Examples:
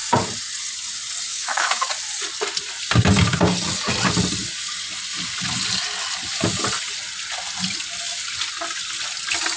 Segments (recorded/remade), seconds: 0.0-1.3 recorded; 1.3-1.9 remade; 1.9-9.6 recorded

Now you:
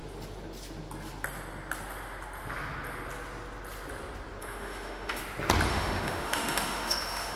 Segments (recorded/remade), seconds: 0.0-4.4 recorded; 4.4-5.2 remade; 5.2-5.7 recorded; 5.7-7.4 remade

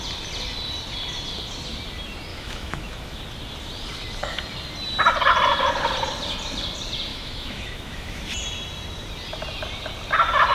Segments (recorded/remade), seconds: 0.0-2.3 recorded; 2.3-3.2 remade; 3.2-7.1 recorded; 7.1-8.2 remade; 8.2-10.5 recorded

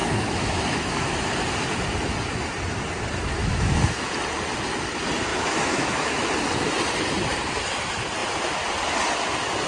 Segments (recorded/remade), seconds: 0.0-1.3 remade; 1.3-3.4 recorded; 3.4-4.1 remade; 4.1-5.3 recorded; 5.3-6.3 remade; 6.3-9.7 recorded

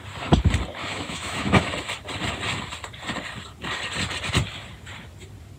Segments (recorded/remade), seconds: 0.0-0.8 recorded; 0.8-1.7 remade; 1.7-5.6 recorded

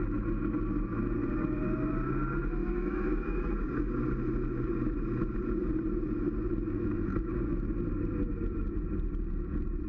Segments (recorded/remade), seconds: 0.0-2.6 recorded; 2.6-3.5 remade; 3.5-9.9 recorded

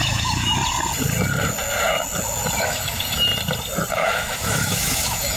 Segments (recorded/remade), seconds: 0.0-0.6 remade; 0.6-2.6 recorded; 2.6-3.3 remade; 3.3-3.9 recorded; 3.9-5.4 remade